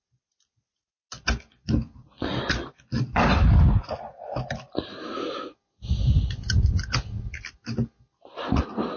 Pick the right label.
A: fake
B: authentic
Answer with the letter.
B